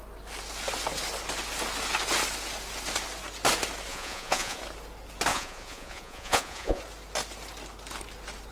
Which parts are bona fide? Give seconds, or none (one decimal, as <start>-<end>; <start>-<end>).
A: 0.0-3.9; 4.6-5.3; 6.8-8.5